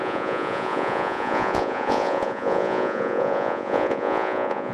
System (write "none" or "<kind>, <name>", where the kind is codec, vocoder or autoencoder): vocoder, Vocos